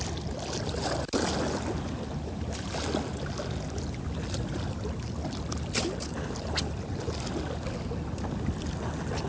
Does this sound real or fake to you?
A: real